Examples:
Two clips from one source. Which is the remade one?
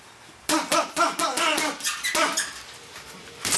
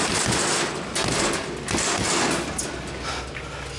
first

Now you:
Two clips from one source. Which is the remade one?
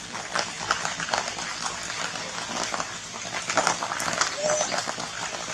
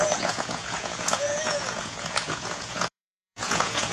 second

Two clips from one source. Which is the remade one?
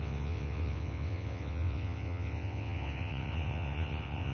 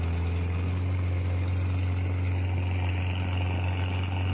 first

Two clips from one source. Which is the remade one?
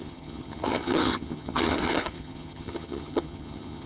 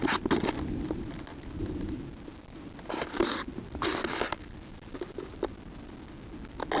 first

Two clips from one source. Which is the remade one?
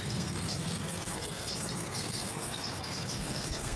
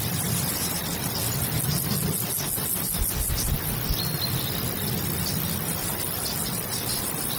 first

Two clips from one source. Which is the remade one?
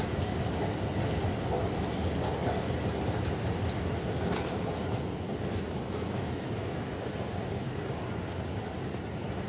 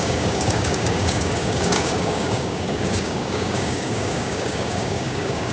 second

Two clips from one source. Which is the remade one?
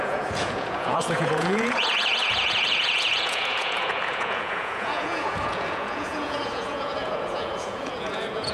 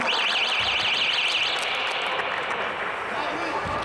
first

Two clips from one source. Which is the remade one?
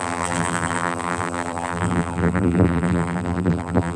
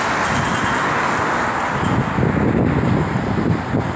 first